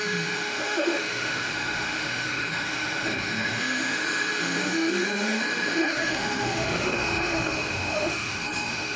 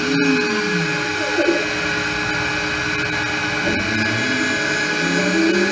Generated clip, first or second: first